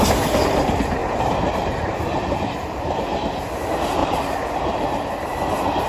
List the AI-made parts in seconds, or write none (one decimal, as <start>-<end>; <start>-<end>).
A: 1.0-3.0; 4.0-4.6